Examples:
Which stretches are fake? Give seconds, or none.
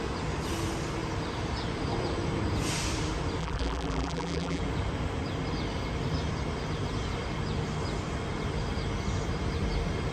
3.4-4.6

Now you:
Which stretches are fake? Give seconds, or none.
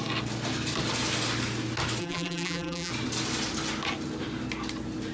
2.0-2.9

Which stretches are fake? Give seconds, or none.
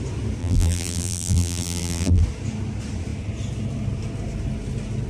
0.4-2.2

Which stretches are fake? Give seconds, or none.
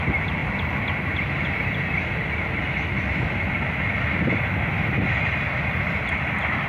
none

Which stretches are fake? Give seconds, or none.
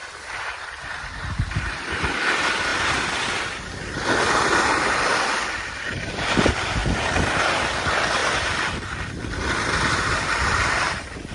0.0-6.8; 7.8-8.2; 9.0-11.3